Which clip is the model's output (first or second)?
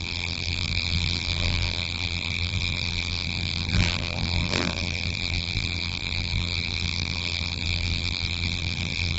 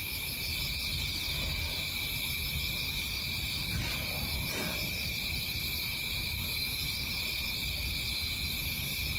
first